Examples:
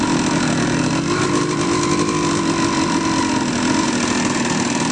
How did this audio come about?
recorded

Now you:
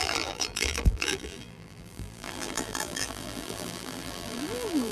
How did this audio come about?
remade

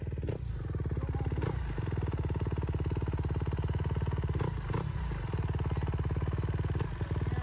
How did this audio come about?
recorded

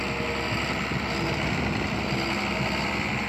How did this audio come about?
recorded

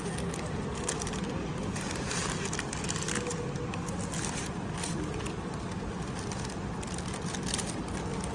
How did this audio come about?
recorded